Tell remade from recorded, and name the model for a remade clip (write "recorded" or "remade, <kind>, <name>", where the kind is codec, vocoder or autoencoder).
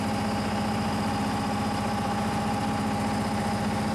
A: recorded